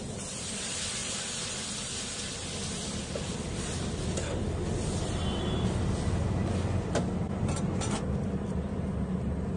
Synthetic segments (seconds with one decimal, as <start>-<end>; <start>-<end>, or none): none